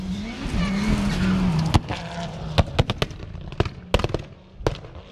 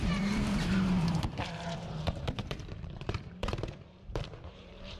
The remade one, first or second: second